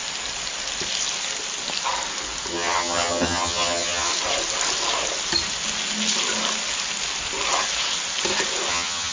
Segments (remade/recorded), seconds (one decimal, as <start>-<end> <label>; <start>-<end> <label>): 0.0-2.5 recorded; 2.5-4.1 remade; 4.1-8.7 recorded; 8.7-9.1 remade